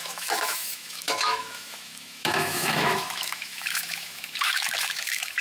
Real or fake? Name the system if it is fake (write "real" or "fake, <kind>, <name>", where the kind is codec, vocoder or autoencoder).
fake, autoencoder, DAC-VAE